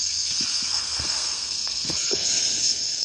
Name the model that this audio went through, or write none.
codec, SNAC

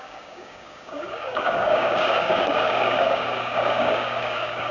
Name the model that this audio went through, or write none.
codec, DAC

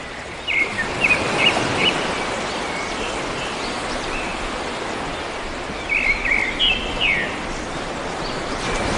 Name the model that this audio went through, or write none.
none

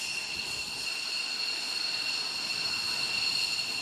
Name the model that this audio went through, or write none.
none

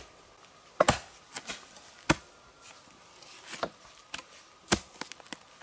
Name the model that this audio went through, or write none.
none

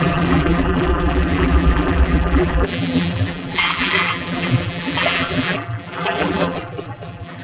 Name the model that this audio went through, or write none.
vocoder, BigVGAN v2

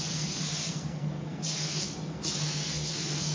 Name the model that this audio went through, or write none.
codec, SNAC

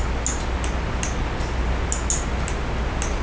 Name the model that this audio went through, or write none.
none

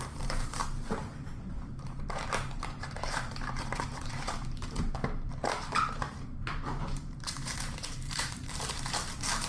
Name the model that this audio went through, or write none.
vocoder, BigVGAN v2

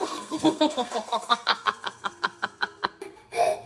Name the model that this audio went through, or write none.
codec, SNAC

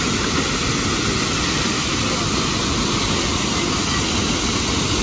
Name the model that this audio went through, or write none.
none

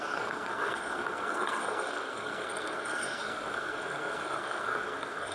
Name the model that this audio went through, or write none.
codec, SNAC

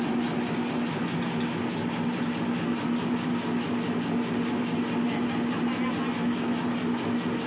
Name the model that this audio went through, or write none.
none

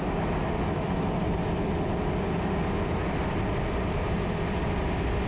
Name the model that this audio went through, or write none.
none